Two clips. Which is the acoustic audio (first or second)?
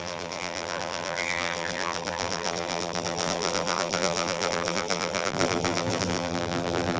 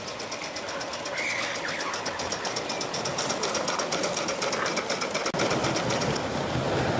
second